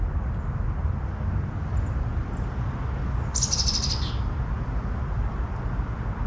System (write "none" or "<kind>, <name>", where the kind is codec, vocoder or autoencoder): none